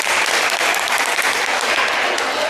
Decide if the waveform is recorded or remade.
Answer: recorded